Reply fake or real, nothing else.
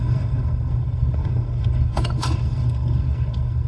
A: fake